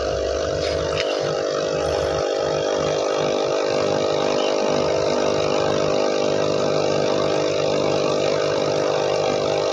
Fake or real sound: real